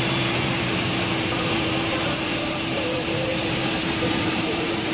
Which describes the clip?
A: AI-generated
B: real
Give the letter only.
A